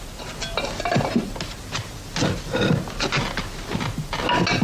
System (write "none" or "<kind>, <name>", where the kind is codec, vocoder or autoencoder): none